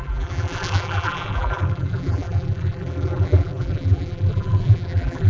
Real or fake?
fake